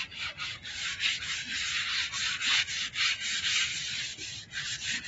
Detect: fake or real fake